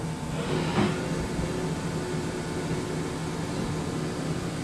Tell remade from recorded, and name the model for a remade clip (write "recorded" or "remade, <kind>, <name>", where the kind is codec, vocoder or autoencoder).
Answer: recorded